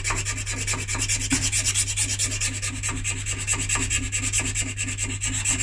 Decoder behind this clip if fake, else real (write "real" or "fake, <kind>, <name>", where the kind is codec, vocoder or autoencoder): real